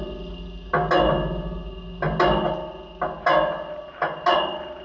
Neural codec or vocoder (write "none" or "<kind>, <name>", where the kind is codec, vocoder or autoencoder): none